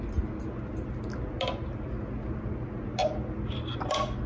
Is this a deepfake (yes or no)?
no